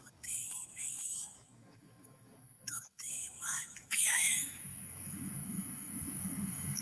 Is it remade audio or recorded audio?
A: remade